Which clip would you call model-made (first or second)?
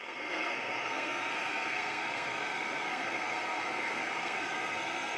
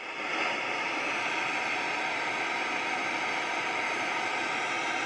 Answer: first